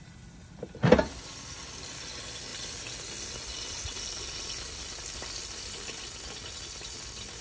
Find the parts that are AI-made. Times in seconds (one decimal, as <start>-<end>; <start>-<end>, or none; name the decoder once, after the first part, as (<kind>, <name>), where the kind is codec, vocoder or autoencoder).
none